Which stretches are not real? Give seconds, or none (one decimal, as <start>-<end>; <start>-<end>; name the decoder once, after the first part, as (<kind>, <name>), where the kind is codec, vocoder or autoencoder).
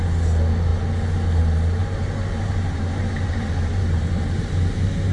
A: 1.8-5.1 (vocoder, BigVGAN v2)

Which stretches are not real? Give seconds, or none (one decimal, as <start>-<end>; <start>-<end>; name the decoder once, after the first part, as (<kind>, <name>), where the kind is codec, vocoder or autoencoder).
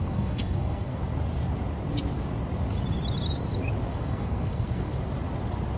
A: 0.0-1.0 (codec, SNAC); 3.9-4.9